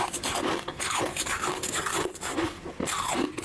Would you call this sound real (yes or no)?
yes